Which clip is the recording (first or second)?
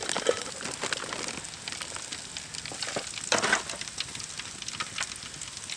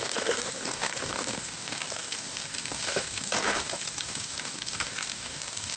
first